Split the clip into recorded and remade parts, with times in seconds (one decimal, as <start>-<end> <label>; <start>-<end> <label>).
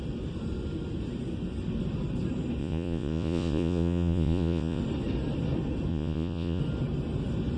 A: 0.0-2.6 recorded; 2.6-4.8 remade; 4.8-5.9 recorded; 5.9-6.6 remade; 6.6-7.6 recorded